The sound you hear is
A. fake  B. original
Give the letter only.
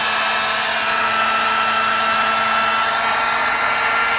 B